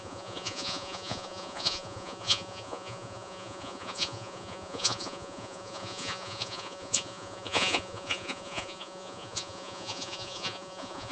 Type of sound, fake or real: fake